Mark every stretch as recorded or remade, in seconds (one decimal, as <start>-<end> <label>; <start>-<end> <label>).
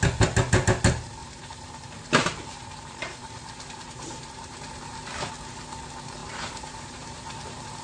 0.0-1.2 recorded; 1.2-5.3 remade; 5.3-6.2 recorded; 6.2-7.8 remade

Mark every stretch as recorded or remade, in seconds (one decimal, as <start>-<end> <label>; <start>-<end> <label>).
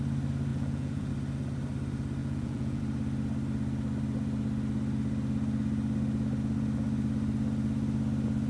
0.0-0.5 recorded; 0.5-1.1 remade; 1.1-2.2 recorded; 2.2-2.8 remade; 2.8-8.5 recorded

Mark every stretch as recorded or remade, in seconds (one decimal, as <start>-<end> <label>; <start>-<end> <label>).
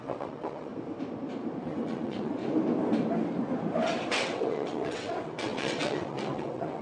0.0-0.7 remade; 0.7-1.6 recorded; 1.6-2.4 remade; 2.4-4.1 recorded; 4.1-6.8 remade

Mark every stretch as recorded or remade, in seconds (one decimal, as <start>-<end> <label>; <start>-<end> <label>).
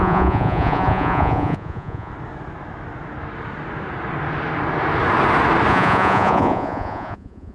0.0-2.1 remade; 2.1-5.7 recorded; 5.7-7.5 remade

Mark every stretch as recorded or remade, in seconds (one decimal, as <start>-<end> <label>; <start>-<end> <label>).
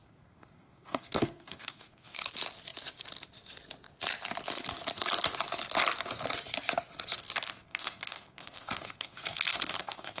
0.0-2.2 remade; 2.2-7.5 recorded; 7.5-10.2 remade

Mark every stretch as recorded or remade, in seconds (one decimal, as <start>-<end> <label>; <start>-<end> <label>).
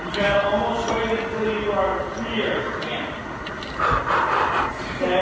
0.0-1.9 recorded; 1.9-2.6 remade; 2.6-5.2 recorded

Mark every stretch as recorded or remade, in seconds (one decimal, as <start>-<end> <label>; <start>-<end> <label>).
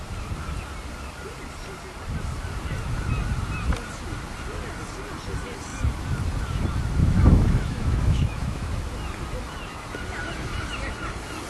0.0-7.0 recorded; 7.0-8.7 remade; 8.7-11.5 recorded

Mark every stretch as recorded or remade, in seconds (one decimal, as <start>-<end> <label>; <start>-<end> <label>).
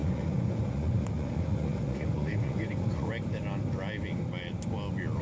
0.0-3.1 remade; 3.1-5.2 recorded